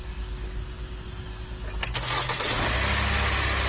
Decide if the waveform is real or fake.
real